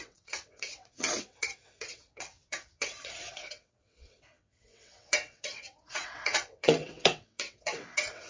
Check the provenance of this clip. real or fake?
fake